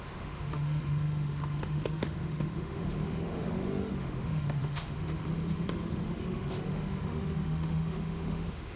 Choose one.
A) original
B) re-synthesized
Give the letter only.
B